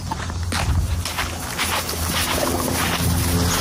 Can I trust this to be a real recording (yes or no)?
yes